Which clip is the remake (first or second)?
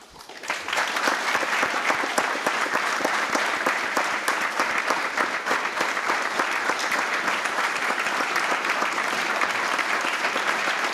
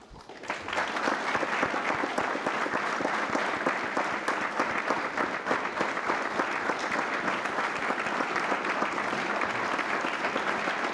first